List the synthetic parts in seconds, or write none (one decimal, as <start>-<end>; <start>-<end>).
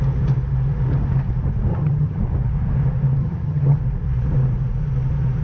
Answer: 1.7-2.2; 3.2-3.8